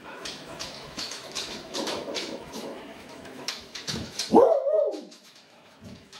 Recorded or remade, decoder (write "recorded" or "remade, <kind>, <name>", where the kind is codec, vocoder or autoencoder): remade, autoencoder, DAC-VAE